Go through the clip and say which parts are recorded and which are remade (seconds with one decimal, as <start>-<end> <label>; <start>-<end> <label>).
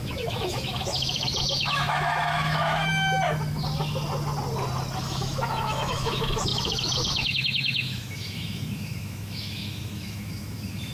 0.0-2.9 remade; 2.9-5.0 recorded; 5.0-10.9 remade